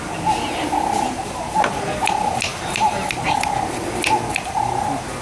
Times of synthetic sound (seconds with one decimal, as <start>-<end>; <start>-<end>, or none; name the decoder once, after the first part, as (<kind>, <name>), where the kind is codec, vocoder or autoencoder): 2.5-3.1 (vocoder, BigVGAN v2)